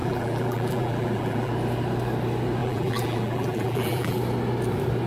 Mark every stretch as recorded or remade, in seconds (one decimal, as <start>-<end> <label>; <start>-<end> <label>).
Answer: 0.0-1.5 remade; 1.5-2.6 recorded; 2.6-4.2 remade; 4.2-5.1 recorded